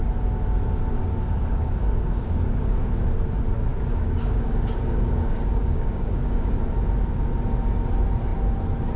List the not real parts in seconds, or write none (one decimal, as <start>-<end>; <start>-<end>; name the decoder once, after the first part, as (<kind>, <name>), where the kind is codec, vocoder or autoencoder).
1.0-2.9 (codec, DAC); 3.7-6.6